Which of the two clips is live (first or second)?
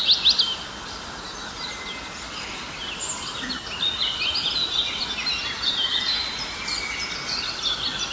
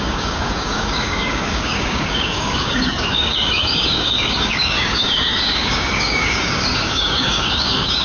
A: first